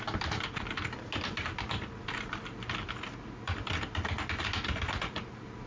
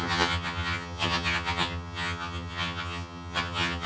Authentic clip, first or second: first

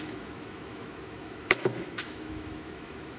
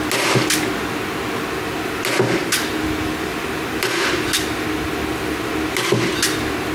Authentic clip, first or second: second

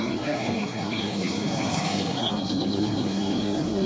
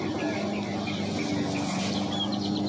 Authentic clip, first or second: second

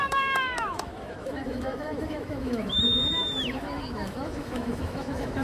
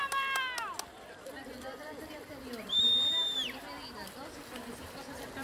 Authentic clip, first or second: second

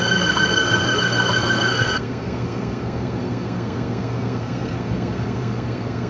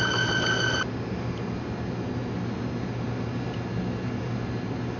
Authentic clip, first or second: second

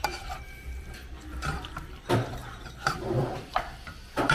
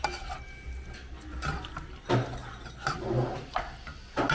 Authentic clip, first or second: second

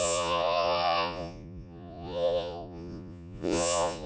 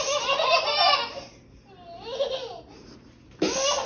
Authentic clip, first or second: second